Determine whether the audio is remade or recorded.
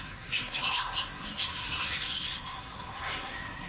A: remade